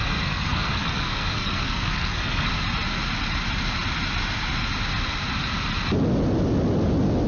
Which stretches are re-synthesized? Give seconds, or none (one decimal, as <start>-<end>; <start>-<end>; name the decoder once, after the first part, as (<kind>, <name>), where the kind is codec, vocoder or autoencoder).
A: 0.0-2.5 (codec, SNAC)